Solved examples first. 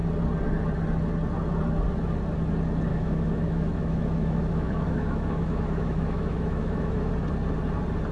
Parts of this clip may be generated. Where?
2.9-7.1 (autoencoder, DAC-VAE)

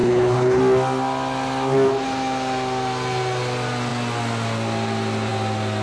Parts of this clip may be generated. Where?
0.0-0.6 (codec, HILCodec)

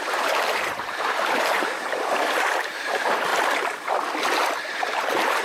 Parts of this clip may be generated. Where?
0.0-3.3 (vocoder, BigVGAN v2); 4.6-5.4

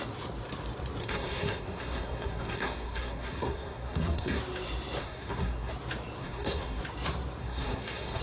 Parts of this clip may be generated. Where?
1.0-4.4 (codec, SNAC); 5.0-5.7; 6.2-6.8; 7.4-8.2

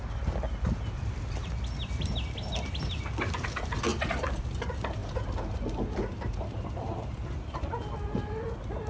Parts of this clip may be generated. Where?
none

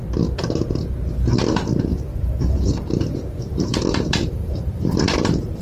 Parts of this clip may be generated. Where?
1.9-5.6 (vocoder, BigVGAN v2)